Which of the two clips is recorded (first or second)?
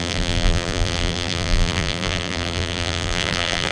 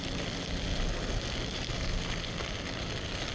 second